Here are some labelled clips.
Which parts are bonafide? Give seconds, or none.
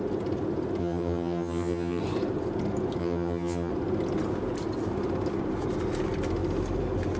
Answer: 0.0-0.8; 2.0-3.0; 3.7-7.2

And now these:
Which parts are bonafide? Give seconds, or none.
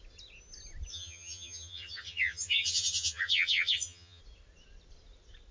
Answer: 0.0-0.9; 4.2-5.5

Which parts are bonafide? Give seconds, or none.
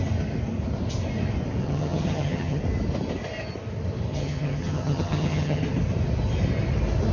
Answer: 0.0-1.6; 2.6-4.1; 5.6-7.1